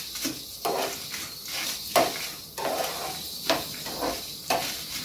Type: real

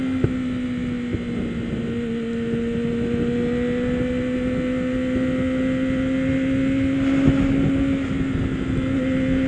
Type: real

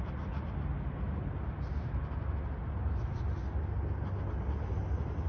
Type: real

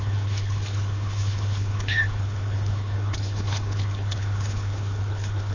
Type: fake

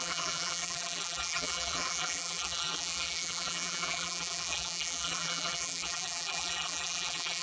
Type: fake